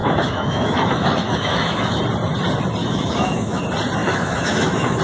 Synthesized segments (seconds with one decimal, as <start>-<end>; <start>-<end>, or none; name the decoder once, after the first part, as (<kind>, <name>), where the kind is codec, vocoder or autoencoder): 0.0-2.0 (autoencoder, DAC-VAE); 2.8-3.6; 4.0-5.0

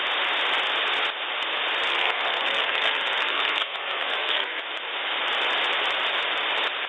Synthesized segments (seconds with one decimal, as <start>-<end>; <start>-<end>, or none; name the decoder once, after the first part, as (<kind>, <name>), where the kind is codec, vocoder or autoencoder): 1.9-4.6 (codec, SNAC)

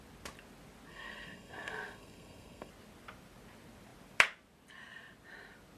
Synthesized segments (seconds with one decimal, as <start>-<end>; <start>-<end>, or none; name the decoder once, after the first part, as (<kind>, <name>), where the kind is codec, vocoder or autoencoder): 0.9-2.7 (codec, SNAC)

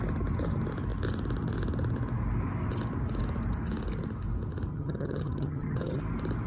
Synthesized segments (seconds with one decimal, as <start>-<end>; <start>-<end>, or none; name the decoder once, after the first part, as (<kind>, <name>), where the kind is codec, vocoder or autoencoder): 4.7-6.0 (vocoder, HiFi-GAN)

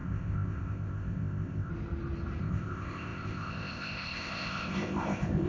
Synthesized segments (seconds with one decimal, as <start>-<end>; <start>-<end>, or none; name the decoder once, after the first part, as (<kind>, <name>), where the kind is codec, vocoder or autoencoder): 0.0-1.7 (codec, ZipCodec); 2.4-5.5

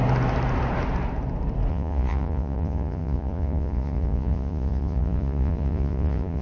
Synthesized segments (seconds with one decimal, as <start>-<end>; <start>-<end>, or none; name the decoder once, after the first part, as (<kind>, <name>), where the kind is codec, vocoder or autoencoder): 1.7-6.4 (vocoder, Vocos)